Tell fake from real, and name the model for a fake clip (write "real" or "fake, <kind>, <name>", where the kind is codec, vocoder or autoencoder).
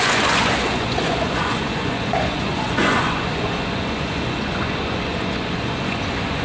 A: fake, vocoder, Vocos